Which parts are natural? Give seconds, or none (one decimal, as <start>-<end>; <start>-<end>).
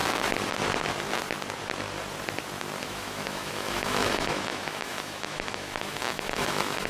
0.0-2.8